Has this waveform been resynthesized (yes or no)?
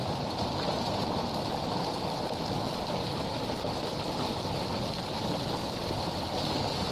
no